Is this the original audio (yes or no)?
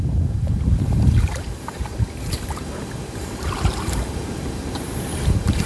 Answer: no